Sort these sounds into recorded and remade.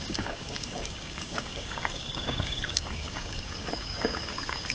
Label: remade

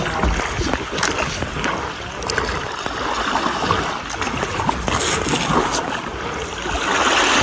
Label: recorded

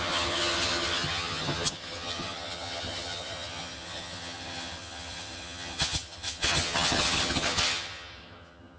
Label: remade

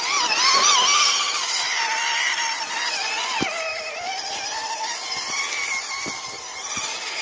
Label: recorded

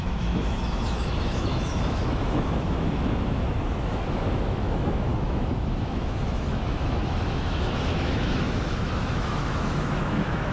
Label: remade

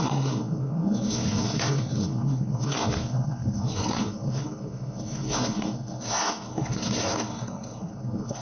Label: remade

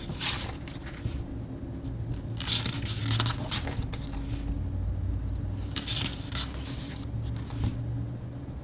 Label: recorded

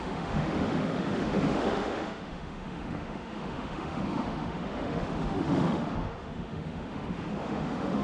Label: remade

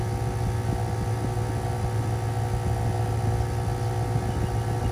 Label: recorded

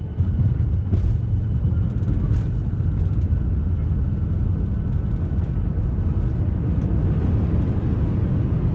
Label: recorded